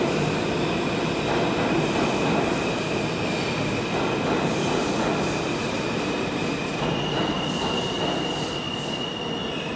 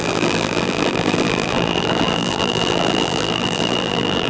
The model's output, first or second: second